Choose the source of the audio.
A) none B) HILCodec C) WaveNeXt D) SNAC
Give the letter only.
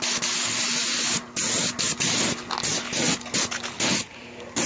A